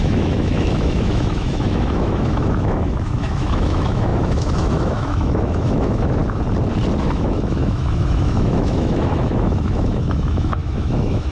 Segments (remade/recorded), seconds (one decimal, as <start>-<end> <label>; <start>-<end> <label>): 0.0-6.2 remade; 6.2-7.0 recorded; 7.0-11.3 remade